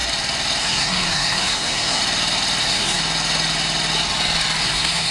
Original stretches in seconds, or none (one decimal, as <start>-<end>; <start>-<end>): 0.0-0.6; 2.0-2.6; 3.0-4.6